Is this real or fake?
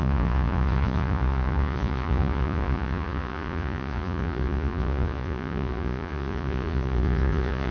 fake